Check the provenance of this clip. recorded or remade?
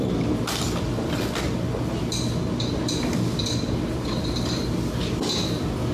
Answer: recorded